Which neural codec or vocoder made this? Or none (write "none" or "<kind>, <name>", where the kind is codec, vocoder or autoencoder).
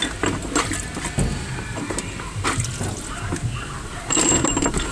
none